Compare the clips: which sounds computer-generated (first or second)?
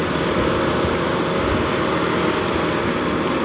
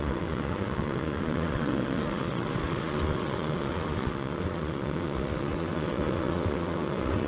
second